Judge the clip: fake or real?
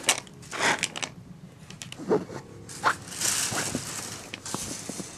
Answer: real